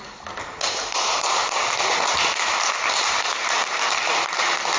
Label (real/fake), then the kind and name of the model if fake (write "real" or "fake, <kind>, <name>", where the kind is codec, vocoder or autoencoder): real